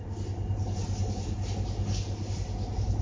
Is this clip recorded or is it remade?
recorded